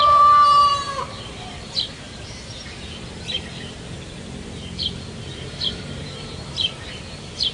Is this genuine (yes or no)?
no